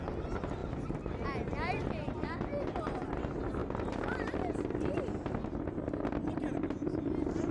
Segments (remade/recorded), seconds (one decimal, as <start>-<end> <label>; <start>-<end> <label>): 0.0-0.6 recorded; 0.6-3.2 remade; 3.2-7.5 recorded